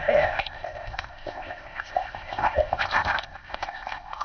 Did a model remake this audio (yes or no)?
yes